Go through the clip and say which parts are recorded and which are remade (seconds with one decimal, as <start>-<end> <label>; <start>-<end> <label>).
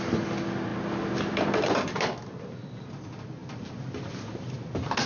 0.0-5.1 recorded